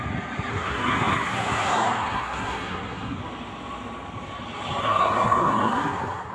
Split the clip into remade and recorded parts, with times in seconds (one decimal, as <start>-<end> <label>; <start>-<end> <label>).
0.0-0.5 recorded; 0.5-3.2 remade; 3.2-4.8 recorded; 4.8-6.3 remade